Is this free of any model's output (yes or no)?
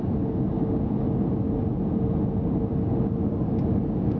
yes